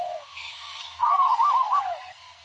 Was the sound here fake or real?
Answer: fake